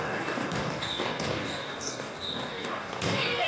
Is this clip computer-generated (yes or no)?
yes